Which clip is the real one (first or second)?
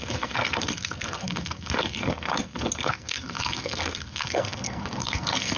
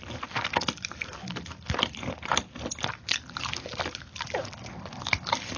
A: second